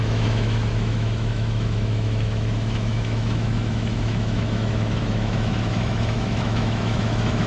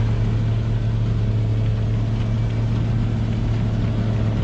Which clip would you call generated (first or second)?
first